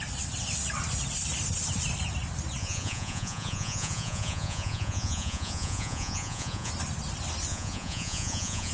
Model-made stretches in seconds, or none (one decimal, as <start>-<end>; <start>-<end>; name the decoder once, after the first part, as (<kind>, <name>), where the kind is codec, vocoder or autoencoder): 2.6-6.7 (vocoder, Vocos); 7.5-8.7